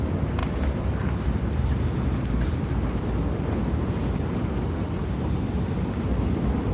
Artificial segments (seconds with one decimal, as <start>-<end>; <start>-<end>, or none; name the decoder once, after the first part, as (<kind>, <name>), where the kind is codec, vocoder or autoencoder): none